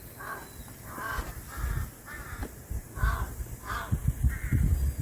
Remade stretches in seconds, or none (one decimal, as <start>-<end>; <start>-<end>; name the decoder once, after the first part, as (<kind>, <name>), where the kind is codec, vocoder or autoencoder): 2.4-3.5 (vocoder, BigVGAN v2)